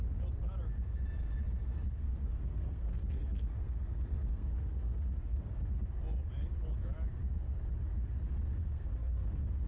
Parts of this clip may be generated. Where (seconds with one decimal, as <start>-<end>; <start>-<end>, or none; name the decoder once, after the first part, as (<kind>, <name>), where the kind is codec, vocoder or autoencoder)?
2.0-5.5 (codec, SNAC); 8.6-9.7